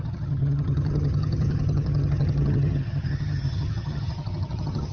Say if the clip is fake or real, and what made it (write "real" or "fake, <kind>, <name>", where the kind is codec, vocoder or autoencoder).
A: fake, vocoder, HiFi-GAN